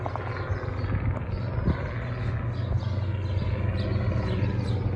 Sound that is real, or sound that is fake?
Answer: real